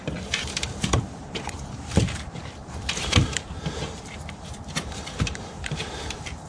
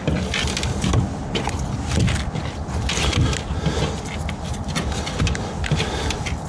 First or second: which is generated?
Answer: first